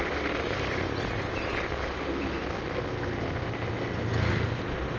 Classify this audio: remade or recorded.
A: recorded